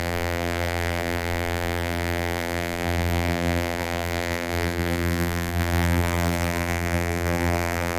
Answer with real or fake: fake